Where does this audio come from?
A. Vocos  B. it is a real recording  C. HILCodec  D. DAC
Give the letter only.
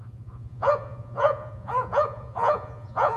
A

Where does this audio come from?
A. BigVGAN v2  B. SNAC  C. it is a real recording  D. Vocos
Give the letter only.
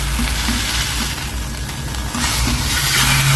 C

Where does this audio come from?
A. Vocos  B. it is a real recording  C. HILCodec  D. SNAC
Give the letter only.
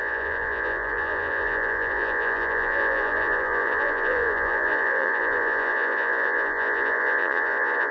A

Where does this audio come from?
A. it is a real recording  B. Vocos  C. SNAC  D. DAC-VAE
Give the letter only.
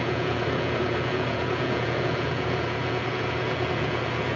B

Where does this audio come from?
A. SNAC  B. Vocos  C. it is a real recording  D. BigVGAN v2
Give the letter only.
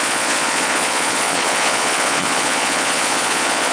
B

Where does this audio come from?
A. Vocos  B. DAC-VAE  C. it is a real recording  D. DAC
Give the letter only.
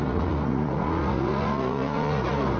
A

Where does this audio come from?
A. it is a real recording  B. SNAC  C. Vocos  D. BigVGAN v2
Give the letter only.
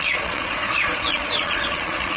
C